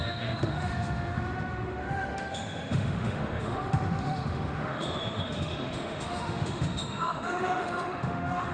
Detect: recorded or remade remade